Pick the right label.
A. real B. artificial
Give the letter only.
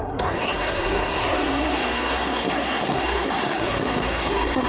B